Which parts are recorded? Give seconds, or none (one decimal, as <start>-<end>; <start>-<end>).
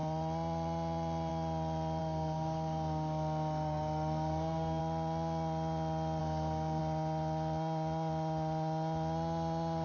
0.0-2.0; 4.8-6.2; 6.8-9.8